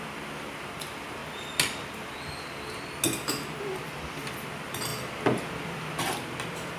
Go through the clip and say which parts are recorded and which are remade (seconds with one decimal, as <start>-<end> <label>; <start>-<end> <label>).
0.0-1.2 remade; 1.2-4.4 recorded; 4.4-4.9 remade; 4.9-6.0 recorded; 6.0-6.8 remade